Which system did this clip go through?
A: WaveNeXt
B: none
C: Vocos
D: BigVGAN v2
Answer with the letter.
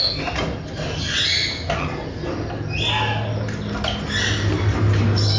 B